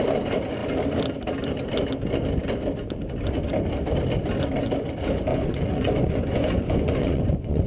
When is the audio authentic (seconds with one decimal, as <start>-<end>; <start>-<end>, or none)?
0.0-5.3